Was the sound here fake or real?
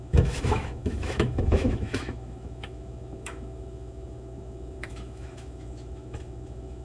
fake